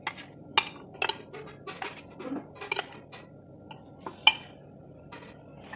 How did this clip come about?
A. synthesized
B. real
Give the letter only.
B